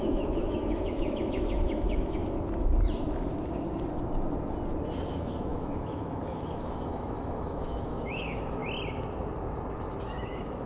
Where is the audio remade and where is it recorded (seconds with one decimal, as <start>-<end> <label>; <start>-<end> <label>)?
0.0-2.2 remade; 2.2-5.1 recorded; 5.1-8.6 remade; 8.6-10.0 recorded; 10.0-10.7 remade